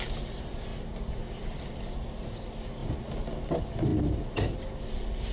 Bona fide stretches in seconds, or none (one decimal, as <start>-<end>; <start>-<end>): 0.0-5.3